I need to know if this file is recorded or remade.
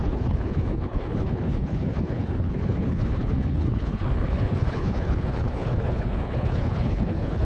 remade